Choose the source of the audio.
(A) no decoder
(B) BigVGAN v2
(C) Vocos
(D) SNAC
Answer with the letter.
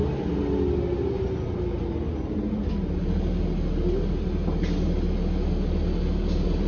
A